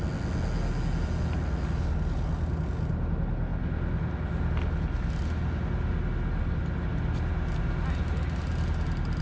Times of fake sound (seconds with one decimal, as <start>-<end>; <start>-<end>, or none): none